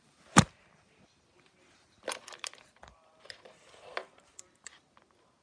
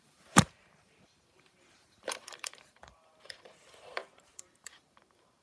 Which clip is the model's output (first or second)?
second